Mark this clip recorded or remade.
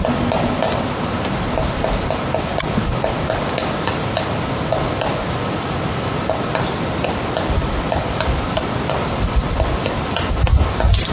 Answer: recorded